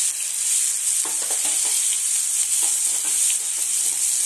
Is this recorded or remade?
recorded